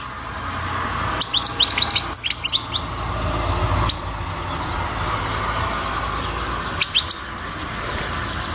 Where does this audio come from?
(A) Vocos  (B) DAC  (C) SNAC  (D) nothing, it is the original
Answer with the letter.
D